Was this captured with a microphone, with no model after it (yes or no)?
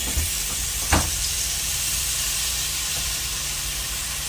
yes